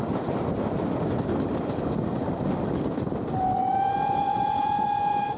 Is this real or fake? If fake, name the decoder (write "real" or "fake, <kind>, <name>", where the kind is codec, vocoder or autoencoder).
real